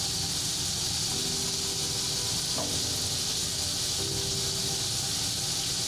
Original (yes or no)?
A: yes